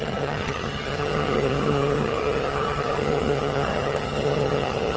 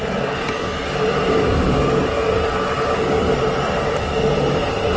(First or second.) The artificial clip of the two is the first